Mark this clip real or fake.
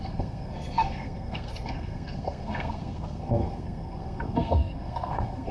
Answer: fake